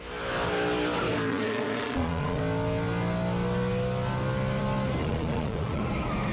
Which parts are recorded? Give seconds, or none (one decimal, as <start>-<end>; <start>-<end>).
0.0-1.3; 2.4-5.0; 5.8-6.3